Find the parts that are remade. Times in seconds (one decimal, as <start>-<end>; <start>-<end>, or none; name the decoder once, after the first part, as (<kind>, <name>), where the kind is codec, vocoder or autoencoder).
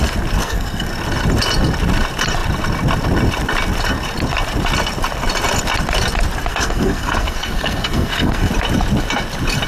0.4-0.9 (codec, SNAC); 6.5-8.5